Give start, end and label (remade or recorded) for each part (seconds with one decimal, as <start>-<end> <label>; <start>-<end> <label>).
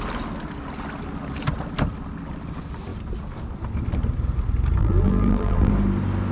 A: 0.0-4.8 recorded; 4.8-5.7 remade; 5.7-6.3 recorded